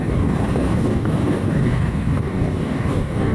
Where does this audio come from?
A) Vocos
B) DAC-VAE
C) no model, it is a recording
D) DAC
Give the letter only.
D